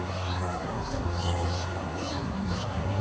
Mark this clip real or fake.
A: fake